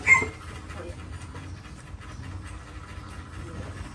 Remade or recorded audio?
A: recorded